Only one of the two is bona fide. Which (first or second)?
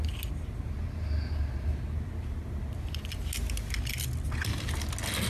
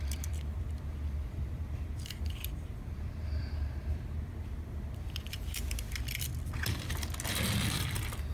first